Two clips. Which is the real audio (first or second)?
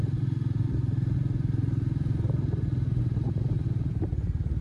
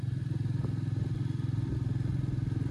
second